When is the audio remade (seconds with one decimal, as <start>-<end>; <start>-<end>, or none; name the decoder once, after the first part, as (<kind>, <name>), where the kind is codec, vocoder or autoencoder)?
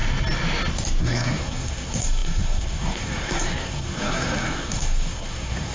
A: 1.0-5.7 (codec, SNAC)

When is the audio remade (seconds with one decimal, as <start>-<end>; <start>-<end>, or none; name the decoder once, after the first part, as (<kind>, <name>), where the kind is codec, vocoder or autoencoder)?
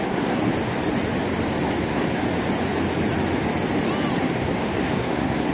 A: 0.0-0.4 (codec, SNAC); 1.8-2.2; 4.2-5.5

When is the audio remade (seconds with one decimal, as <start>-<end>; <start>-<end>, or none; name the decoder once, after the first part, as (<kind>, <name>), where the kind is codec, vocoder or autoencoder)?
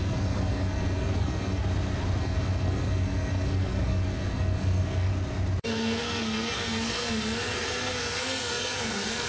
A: 0.0-1.6 (codec, SNAC); 2.2-5.1; 5.6-9.3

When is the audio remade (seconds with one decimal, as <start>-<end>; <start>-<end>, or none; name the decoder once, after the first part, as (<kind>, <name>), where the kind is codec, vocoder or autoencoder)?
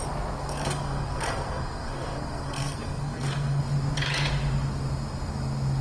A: 0.4-3.6 (codec, SNAC)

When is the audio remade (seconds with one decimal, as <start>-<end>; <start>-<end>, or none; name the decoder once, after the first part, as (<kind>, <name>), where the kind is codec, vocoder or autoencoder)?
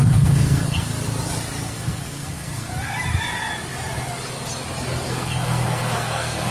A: 0.0-0.9 (codec, SNAC); 1.6-2.7; 5.1-6.5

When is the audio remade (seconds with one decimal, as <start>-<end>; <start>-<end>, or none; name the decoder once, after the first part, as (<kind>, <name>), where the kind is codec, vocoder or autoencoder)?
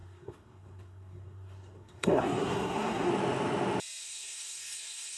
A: 0.0-3.1 (codec, SNAC); 4.0-5.2